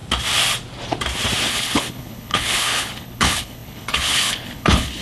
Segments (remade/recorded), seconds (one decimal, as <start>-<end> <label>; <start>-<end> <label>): 0.0-1.5 recorded; 1.5-5.0 remade